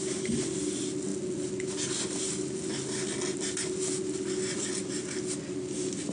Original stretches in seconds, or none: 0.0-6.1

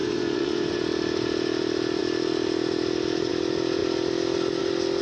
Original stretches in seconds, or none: 0.8-5.0

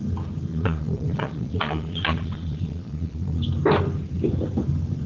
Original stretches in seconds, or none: 0.0-0.5; 3.4-5.1

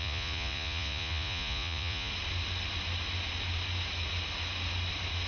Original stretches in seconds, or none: 2.1-5.3

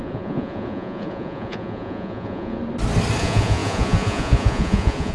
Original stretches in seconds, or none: 2.6-3.2

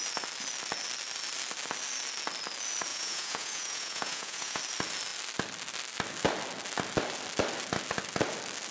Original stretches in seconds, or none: 0.0-2.9; 4.6-8.7